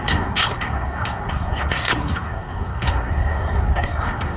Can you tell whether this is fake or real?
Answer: fake